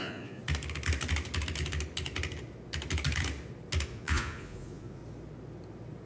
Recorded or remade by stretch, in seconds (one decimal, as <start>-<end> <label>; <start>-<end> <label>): 0.0-0.4 remade; 0.4-3.9 recorded; 3.9-5.0 remade; 5.0-6.1 recorded